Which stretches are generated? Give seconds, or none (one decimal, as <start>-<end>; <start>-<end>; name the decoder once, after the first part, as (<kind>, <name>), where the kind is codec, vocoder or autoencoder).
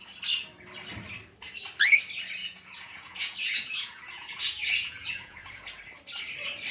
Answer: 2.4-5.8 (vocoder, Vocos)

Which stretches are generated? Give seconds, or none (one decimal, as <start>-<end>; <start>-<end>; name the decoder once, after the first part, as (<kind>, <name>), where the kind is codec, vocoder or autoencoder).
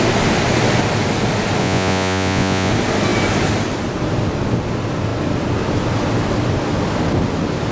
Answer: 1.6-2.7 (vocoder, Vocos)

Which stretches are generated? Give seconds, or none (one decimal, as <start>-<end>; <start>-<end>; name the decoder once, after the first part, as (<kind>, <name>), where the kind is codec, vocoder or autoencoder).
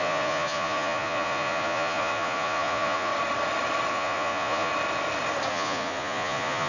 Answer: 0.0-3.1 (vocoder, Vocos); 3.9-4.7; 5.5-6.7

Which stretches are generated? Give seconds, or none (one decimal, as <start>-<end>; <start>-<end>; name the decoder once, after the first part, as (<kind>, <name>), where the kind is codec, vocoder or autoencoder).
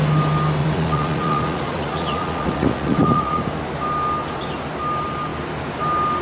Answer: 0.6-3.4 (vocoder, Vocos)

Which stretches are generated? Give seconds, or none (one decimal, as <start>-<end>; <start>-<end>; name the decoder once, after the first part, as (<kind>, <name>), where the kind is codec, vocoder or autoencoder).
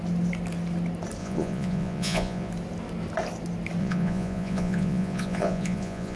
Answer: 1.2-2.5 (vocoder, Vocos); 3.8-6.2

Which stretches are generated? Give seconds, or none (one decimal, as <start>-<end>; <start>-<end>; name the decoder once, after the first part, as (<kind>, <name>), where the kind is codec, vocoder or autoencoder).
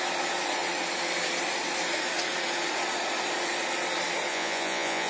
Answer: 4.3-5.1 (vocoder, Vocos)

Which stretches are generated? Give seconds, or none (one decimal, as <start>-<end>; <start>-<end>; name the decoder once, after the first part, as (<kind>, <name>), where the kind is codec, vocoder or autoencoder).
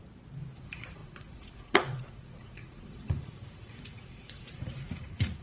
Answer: 0.6-5.4 (vocoder, Vocos)